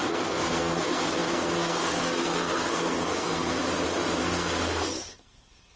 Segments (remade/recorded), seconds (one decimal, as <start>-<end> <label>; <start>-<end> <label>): 0.0-3.6 remade; 3.6-4.2 recorded; 4.2-5.8 remade